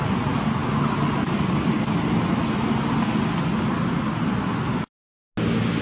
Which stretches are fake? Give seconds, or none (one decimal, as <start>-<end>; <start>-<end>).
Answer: none

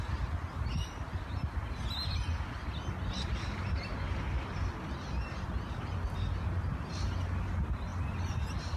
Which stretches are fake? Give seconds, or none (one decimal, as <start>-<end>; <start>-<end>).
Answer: 3.9-4.4

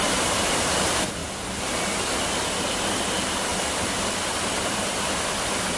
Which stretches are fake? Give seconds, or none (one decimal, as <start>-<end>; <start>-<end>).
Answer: 0.0-1.2; 3.0-3.5; 4.8-5.8

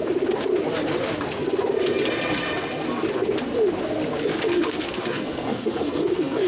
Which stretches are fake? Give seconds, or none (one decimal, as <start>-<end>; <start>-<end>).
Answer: 4.3-6.5

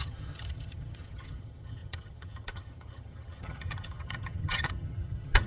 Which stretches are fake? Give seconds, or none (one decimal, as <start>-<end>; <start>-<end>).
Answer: 0.0-5.5

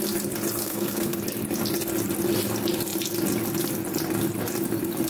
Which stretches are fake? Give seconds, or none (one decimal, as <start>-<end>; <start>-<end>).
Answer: 0.6-1.2